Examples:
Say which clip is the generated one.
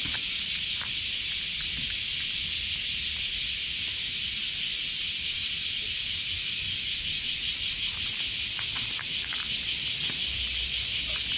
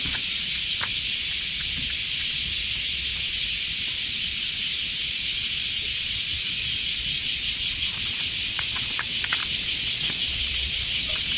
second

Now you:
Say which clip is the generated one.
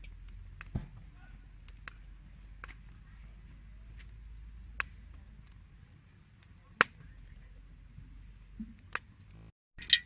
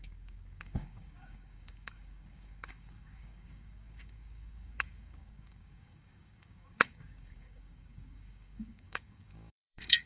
second